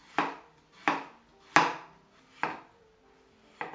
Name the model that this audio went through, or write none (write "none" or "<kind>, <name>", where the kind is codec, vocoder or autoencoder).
none